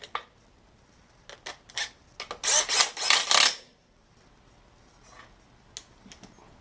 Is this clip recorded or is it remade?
recorded